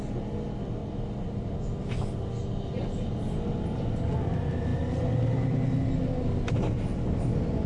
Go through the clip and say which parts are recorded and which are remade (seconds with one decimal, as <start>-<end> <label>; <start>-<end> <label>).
0.0-7.7 recorded

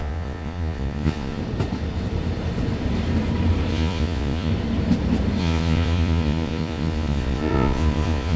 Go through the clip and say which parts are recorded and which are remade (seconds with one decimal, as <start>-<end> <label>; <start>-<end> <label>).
0.0-1.4 remade; 1.4-3.7 recorded; 3.7-4.5 remade; 4.5-5.4 recorded; 5.4-8.4 remade

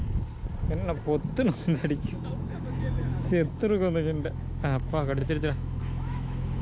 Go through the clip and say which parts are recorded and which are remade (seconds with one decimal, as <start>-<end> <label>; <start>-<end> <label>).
0.0-2.3 recorded; 2.3-6.6 remade

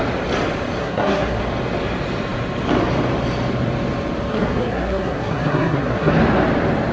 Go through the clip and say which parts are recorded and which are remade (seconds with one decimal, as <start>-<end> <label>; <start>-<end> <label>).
0.0-0.8 recorded; 0.8-1.4 remade; 1.4-4.3 recorded; 4.3-6.1 remade; 6.1-6.9 recorded

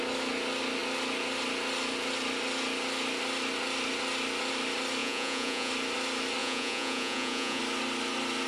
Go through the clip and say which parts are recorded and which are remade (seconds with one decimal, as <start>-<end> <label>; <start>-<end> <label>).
0.0-5.0 recorded; 5.0-5.7 remade; 5.7-6.4 recorded; 6.4-7.6 remade; 7.6-8.5 recorded